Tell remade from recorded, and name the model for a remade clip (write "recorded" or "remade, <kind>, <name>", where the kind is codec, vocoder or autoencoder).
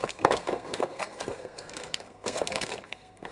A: remade, codec, SNAC